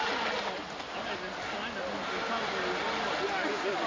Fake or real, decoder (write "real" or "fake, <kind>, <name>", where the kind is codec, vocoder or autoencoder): real